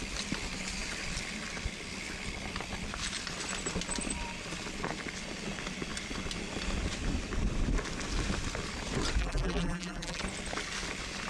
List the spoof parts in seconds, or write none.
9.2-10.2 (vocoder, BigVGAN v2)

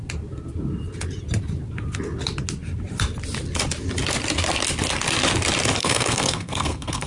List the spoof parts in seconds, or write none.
5.8-7.1 (codec, SNAC)

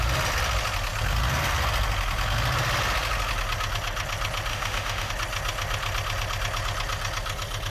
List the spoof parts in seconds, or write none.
4.5-5.1 (autoencoder, DAC-VAE)

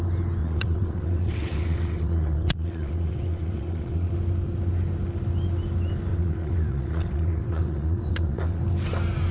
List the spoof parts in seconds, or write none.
0.4-4.1 (vocoder, WaveNeXt); 6.1-8.6